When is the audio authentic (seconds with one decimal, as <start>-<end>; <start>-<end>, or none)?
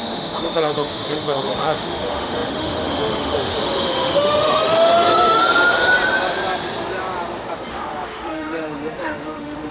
5.4-7.7